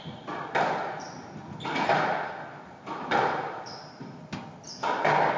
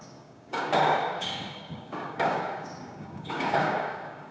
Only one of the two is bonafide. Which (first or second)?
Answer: first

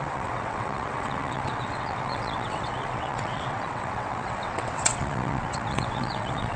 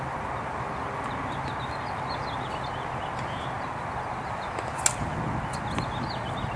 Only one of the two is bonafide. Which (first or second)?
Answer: second